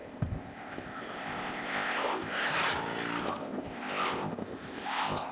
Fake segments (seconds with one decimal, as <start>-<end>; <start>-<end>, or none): 0.0-2.5; 3.2-5.3